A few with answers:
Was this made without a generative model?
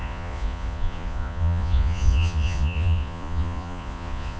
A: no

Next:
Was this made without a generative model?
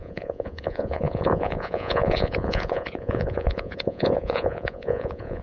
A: no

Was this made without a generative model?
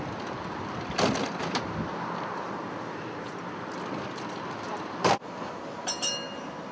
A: yes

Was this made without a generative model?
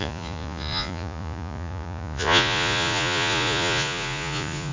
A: no